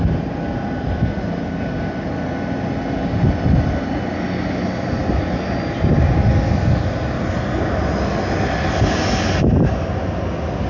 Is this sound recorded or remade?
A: recorded